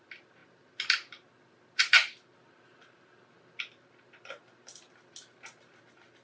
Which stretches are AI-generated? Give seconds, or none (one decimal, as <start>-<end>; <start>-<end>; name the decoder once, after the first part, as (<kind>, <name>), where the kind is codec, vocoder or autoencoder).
none